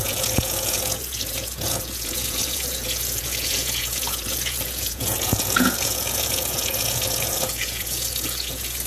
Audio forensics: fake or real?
fake